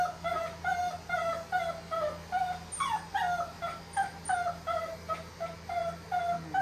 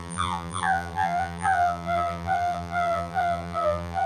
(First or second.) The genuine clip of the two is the first